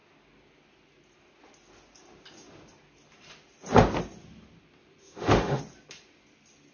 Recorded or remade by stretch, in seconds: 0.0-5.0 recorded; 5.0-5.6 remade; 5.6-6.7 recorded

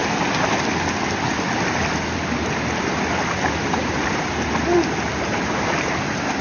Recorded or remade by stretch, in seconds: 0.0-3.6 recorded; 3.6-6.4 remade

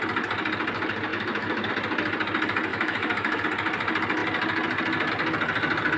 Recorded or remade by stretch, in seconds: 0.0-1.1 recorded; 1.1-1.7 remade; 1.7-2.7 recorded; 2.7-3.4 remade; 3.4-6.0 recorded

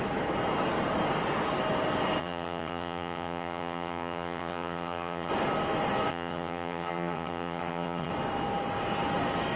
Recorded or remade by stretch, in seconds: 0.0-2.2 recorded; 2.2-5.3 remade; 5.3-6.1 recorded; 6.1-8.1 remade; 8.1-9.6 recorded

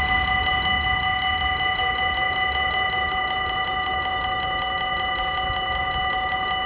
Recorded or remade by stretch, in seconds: 0.0-6.7 recorded